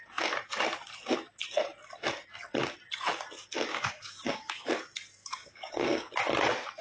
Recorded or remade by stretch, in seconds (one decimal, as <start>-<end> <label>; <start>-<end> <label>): 0.0-3.7 recorded; 3.7-4.7 remade; 4.7-5.2 recorded; 5.2-6.1 remade; 6.1-6.8 recorded